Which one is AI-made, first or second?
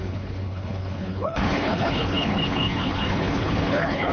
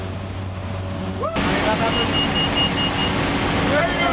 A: first